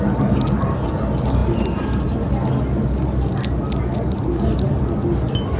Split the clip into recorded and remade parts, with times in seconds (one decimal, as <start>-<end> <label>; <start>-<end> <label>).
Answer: 0.0-5.6 recorded